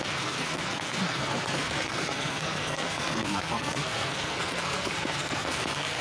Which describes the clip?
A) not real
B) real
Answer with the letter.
A